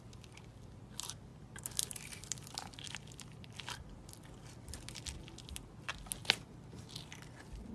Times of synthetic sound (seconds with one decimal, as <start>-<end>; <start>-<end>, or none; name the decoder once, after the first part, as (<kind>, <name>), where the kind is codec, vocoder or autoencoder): 1.3-4.0 (vocoder, BigVGAN v2)